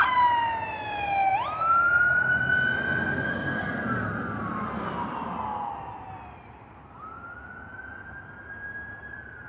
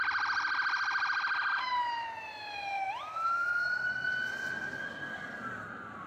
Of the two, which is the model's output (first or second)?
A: second